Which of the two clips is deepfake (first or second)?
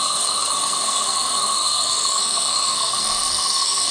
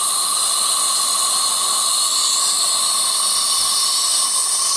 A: first